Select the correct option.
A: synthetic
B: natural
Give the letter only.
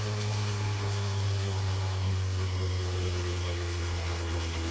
A